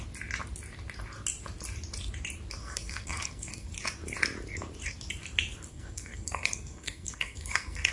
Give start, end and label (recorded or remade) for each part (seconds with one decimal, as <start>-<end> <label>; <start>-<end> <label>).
0.0-2.6 recorded; 2.6-3.7 remade; 3.7-5.7 recorded; 5.7-7.9 remade